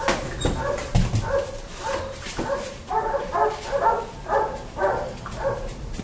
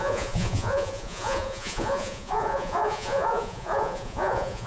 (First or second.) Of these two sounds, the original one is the first